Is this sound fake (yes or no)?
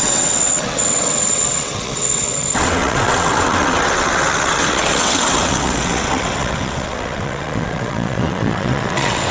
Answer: yes